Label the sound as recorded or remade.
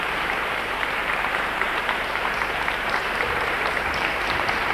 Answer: remade